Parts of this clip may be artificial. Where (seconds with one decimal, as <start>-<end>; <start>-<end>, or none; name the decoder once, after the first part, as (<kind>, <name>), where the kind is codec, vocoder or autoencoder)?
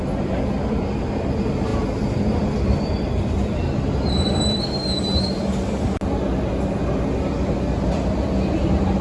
1.7-4.6 (vocoder, BigVGAN v2)